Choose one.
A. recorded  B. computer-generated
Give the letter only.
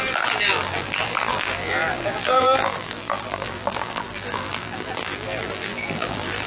B